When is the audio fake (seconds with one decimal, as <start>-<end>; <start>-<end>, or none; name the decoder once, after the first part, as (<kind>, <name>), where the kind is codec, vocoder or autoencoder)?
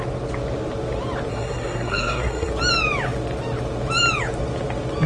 1.3-2.5 (codec, SNAC)